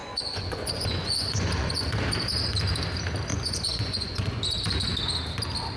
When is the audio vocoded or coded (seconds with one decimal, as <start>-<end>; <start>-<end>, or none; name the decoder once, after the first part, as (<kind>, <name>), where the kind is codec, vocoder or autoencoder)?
0.0-2.1 (vocoder, Vocos); 3.3-4.4